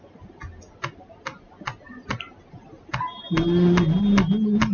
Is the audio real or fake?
real